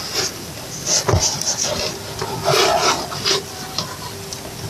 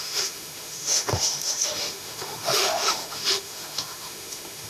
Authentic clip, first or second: first